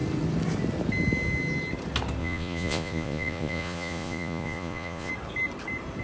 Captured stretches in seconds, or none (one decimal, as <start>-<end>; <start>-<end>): 0.0-2.2; 5.1-6.0